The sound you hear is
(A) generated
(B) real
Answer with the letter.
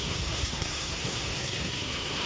A